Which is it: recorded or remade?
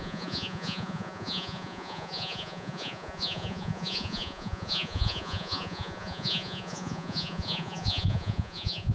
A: remade